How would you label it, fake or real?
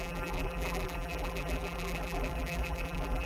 fake